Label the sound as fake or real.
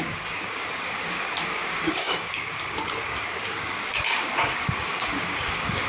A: fake